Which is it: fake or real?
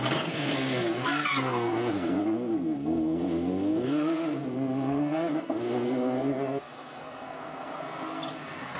fake